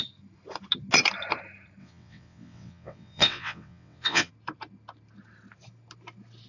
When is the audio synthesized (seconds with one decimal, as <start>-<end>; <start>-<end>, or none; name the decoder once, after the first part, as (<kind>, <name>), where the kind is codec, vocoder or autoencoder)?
1.8-4.3 (vocoder, WaveNeXt)